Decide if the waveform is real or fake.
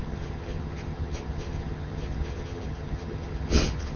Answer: fake